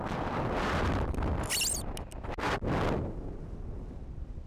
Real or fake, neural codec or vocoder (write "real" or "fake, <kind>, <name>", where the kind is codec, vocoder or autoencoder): real